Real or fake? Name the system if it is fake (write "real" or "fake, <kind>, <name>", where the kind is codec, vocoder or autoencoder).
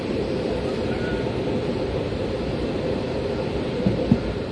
fake, vocoder, BigVGAN v2